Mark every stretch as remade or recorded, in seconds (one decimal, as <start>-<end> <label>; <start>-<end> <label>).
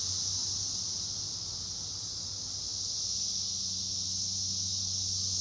0.0-5.4 recorded